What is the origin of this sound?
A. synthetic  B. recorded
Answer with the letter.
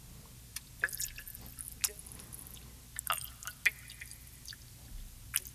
B